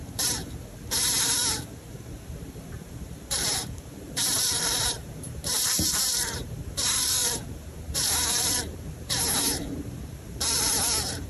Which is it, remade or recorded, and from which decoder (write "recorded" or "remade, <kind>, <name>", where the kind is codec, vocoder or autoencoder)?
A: remade, vocoder, BigVGAN v2